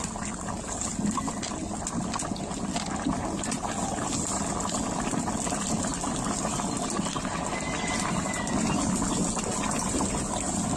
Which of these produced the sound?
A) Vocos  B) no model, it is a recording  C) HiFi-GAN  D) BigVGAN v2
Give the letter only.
B